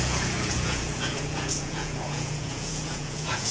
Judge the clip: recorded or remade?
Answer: remade